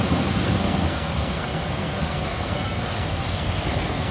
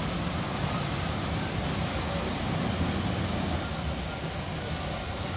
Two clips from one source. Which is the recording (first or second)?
second